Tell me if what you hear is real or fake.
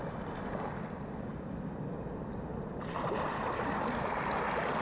real